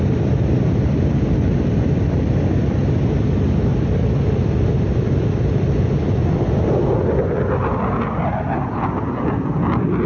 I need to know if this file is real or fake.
real